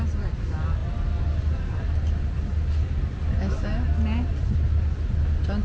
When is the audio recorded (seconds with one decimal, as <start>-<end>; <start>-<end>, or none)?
0.0-5.6